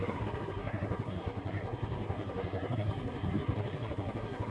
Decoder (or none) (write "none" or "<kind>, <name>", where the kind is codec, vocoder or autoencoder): codec, SNAC